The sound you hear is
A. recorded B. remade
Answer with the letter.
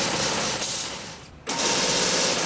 A